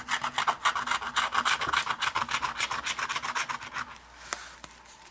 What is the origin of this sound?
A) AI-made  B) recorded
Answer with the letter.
B